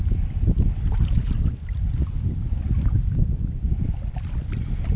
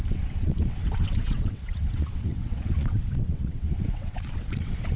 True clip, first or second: first